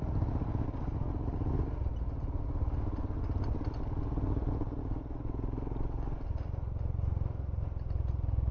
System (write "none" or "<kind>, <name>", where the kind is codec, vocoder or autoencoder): none